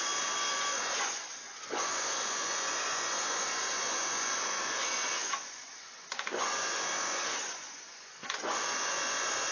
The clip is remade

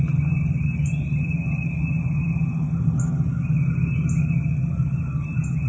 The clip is recorded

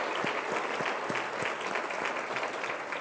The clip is recorded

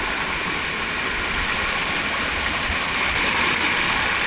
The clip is recorded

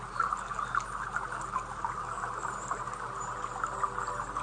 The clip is recorded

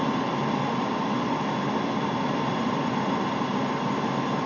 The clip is recorded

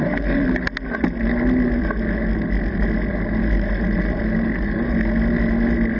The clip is recorded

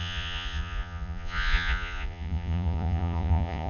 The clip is remade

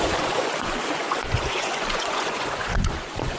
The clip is remade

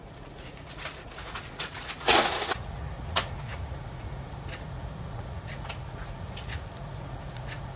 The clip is remade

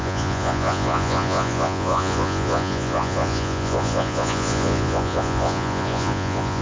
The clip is remade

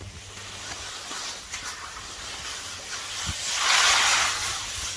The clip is recorded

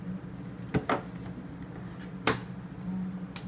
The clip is recorded